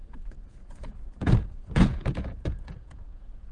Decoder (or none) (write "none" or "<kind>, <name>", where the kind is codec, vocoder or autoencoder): vocoder, Vocos